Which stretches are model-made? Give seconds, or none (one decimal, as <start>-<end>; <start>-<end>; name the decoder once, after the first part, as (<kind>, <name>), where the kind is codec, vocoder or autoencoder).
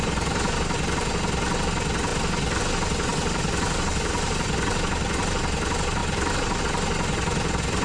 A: 3.1-4.9 (vocoder, BigVGAN v2); 6.0-6.6